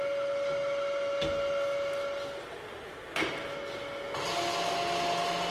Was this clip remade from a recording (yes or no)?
no